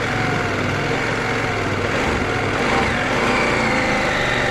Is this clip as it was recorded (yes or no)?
yes